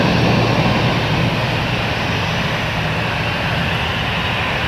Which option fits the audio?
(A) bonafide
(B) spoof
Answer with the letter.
A